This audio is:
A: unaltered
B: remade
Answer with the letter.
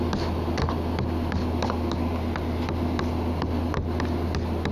A